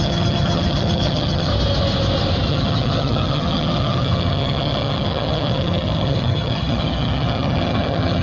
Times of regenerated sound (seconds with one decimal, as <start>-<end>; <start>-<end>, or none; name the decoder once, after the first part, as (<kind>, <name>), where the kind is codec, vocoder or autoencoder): 0.0-1.5 (vocoder, HiFi-GAN); 2.5-8.2